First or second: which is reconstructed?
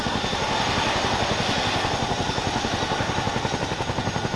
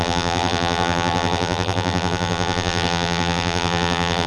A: second